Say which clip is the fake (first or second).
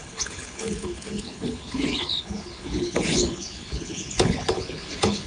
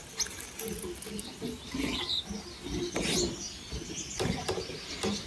first